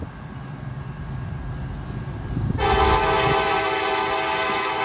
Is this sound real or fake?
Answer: real